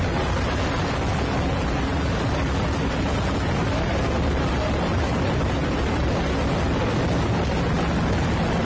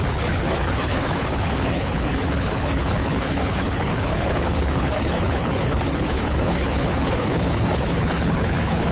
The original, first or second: first